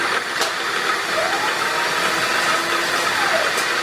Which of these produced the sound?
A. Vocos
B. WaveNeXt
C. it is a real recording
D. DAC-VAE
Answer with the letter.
C